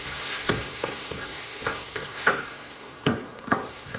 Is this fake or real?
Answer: fake